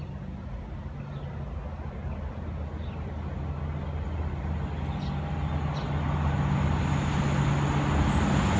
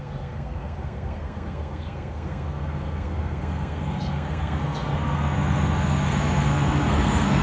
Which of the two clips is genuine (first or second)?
first